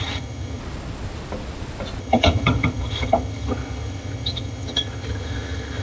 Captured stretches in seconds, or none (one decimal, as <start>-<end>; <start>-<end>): 0.6-2.0